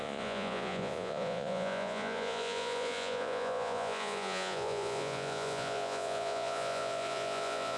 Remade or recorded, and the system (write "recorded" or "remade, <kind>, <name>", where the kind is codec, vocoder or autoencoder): remade, vocoder, Vocos